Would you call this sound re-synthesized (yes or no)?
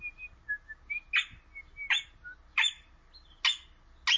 no